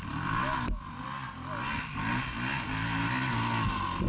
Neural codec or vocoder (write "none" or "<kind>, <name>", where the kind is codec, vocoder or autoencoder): none